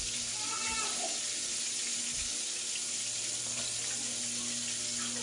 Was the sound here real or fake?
real